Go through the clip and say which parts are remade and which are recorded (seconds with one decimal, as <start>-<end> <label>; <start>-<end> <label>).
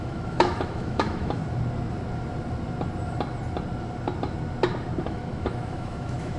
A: 0.0-1.4 remade; 1.4-5.0 recorded; 5.0-6.4 remade